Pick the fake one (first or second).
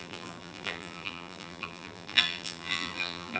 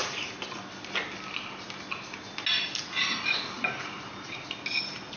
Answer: first